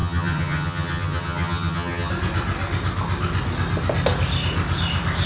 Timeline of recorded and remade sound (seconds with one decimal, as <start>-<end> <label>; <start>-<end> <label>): 0.0-2.1 remade; 2.1-5.3 recorded